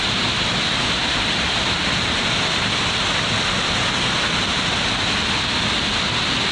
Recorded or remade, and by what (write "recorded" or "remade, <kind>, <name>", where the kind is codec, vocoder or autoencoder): recorded